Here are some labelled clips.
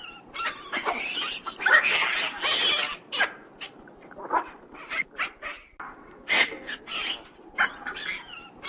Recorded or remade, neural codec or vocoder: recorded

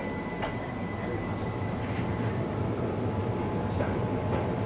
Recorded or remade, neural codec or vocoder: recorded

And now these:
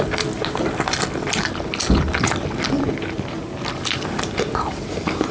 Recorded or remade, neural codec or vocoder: recorded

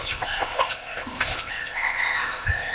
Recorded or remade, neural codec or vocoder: remade, codec, ZipCodec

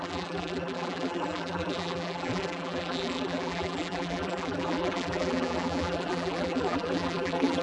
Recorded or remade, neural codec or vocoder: remade, vocoder, BigVGAN v2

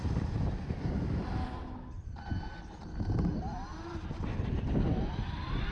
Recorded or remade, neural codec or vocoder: recorded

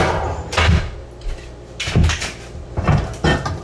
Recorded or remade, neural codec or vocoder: recorded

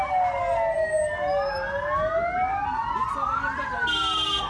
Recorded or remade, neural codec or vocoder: recorded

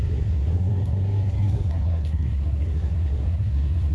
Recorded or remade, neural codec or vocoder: remade, codec, SNAC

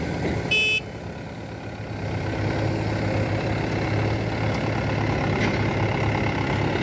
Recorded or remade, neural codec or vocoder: recorded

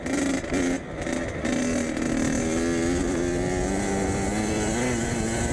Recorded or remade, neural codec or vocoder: recorded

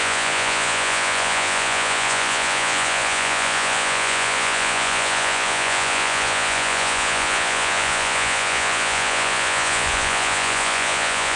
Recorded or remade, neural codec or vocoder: remade, vocoder, Vocos